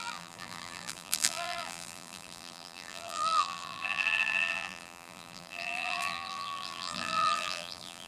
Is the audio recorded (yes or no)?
no